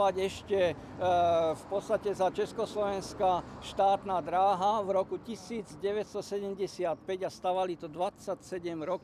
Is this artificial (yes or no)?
no